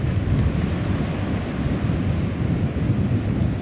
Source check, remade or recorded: recorded